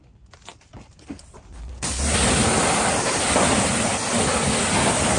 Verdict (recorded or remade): recorded